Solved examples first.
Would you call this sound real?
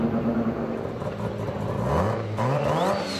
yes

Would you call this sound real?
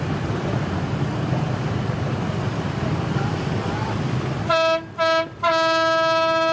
yes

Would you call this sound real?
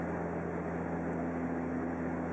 yes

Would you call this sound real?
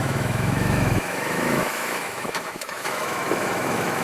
no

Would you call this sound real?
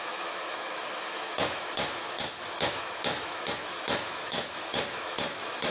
no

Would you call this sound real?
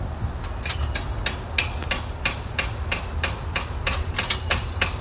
yes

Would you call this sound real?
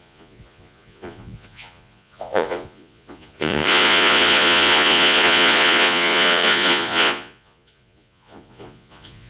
no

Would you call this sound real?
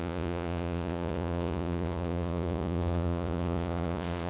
no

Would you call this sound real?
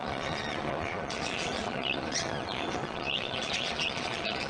no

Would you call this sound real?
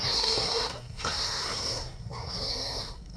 no